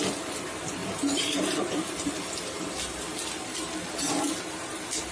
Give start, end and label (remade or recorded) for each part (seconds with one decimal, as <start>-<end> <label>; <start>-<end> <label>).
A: 0.0-0.8 recorded; 0.8-3.9 remade; 3.9-5.1 recorded